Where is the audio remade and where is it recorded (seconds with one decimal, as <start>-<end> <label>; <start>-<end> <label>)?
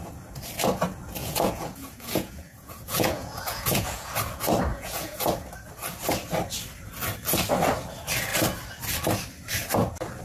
0.0-1.2 recorded; 1.2-4.1 remade; 4.1-4.7 recorded; 4.7-5.3 remade; 5.3-10.2 recorded